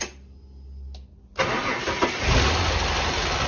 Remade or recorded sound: recorded